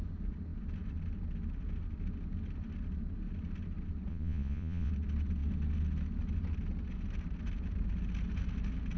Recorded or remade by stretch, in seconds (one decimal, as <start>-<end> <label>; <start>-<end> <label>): 0.0-4.1 recorded; 4.1-4.9 remade; 4.9-9.0 recorded